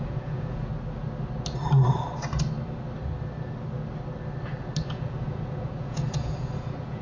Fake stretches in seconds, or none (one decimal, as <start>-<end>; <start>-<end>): 0.0-0.7; 4.9-7.0

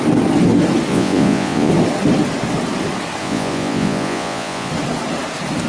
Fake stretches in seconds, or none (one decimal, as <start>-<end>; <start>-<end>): 0.9-1.7; 3.2-4.7

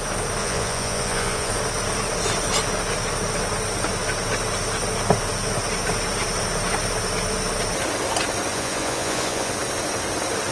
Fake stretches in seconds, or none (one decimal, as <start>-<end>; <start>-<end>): 0.4-1.5; 8.5-9.5